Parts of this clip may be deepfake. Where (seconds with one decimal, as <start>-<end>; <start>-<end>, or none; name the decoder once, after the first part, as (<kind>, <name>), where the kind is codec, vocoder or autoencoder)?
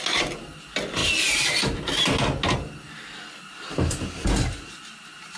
none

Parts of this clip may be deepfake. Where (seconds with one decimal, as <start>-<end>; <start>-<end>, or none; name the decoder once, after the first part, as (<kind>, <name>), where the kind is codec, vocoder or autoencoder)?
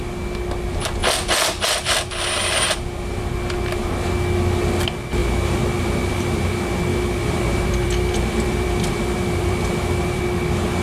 1.0-3.3 (vocoder, BigVGAN v2); 5.2-6.5; 6.9-10.2